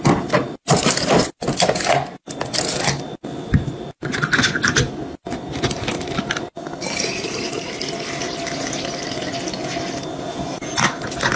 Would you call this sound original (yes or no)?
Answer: yes